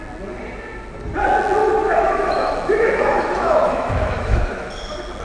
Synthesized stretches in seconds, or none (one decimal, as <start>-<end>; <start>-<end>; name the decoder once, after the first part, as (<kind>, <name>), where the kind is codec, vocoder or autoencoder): 1.6-4.7 (autoencoder, DAC-VAE)